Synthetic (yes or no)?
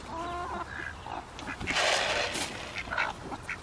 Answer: no